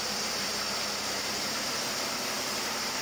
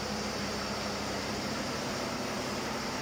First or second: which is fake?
first